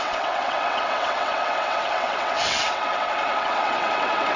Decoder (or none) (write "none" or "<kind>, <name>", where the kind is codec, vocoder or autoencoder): vocoder, WaveNeXt